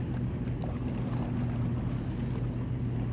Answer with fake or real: real